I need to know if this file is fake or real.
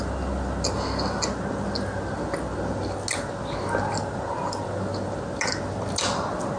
real